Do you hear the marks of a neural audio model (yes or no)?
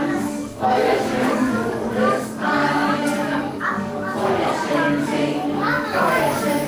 yes